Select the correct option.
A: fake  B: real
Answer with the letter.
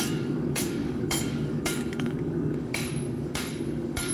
A